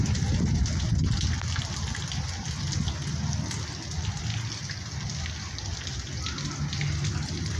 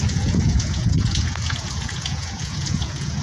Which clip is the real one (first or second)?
first